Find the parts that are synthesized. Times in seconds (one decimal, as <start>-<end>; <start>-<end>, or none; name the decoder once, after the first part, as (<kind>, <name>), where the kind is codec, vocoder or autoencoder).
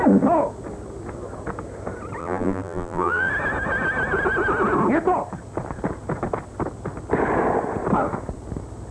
2.2-3.3 (vocoder, BigVGAN v2)